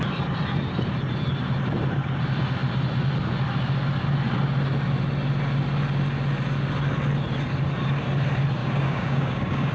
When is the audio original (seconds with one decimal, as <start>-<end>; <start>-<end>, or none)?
0.0-8.6